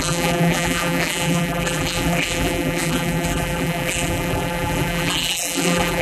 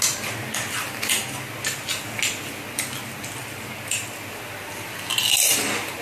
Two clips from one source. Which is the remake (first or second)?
first